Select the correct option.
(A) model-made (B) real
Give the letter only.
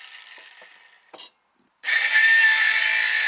B